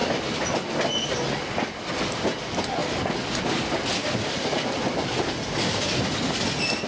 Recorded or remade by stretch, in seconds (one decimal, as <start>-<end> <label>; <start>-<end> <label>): 0.0-6.9 recorded